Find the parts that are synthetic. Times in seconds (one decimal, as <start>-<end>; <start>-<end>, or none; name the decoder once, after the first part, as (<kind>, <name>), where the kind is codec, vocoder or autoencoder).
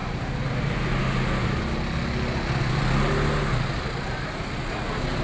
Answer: none